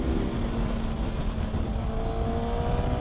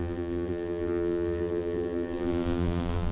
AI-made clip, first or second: second